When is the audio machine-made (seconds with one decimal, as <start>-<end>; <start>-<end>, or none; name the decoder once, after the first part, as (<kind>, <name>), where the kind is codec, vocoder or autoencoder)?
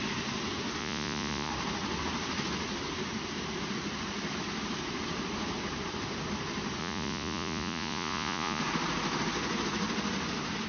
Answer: 0.8-1.5 (vocoder, Vocos); 6.8-8.6